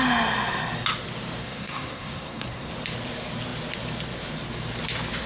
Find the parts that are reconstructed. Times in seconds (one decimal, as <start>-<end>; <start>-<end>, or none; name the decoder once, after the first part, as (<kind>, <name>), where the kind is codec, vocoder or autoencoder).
1.4-2.7 (codec, SNAC)

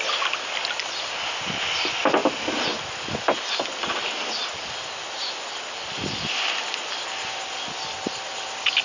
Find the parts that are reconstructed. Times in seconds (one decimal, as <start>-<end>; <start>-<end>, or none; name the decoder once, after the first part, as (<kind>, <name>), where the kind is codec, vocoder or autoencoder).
none

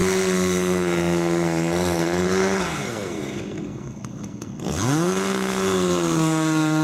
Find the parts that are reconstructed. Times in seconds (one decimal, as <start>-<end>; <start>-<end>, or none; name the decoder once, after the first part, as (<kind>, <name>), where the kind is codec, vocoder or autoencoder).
0.0-6.8 (codec, SNAC)

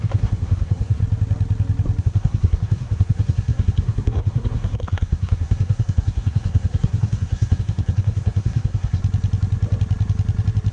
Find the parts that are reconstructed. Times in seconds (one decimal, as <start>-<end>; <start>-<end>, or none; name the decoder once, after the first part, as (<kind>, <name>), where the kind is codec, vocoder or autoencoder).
0.0-1.0 (codec, SNAC); 2.0-9.0

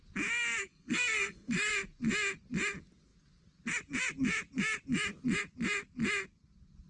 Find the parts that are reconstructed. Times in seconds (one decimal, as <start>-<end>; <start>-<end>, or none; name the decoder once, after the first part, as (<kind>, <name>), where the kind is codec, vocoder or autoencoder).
0.6-1.7 (codec, SNAC)

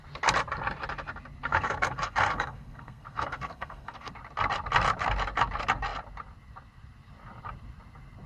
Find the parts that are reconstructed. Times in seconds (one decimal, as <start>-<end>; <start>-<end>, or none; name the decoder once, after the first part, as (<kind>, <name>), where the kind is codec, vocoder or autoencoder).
1.5-4.1 (codec, SNAC)

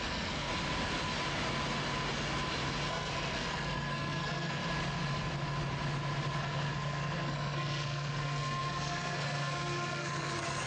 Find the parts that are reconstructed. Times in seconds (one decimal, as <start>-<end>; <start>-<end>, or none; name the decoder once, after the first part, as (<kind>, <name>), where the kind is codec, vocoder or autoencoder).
0.0-0.5 (codec, SNAC); 2.9-4.6; 6.4-10.7

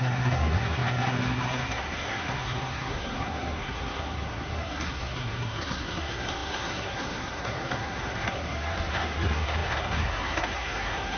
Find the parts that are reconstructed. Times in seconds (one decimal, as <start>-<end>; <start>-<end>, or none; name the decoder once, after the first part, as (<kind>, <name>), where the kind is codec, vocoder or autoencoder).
0.0-11.2 (codec, SNAC)